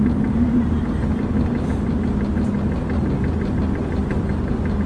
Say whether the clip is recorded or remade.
recorded